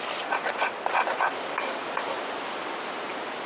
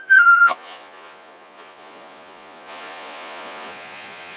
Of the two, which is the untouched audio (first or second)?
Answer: first